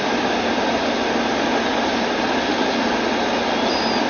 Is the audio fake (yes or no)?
no